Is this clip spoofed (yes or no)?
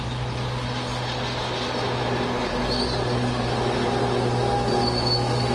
no